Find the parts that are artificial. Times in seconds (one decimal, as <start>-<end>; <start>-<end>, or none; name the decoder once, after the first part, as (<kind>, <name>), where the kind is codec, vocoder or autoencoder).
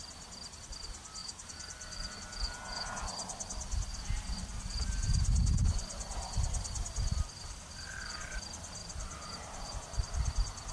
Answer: 1.2-2.1 (vocoder, BigVGAN v2); 3.9-8.0; 8.8-9.7